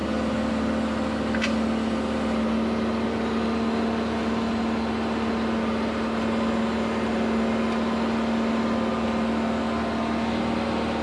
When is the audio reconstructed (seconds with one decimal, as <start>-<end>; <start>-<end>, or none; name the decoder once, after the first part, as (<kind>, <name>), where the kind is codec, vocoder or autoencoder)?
none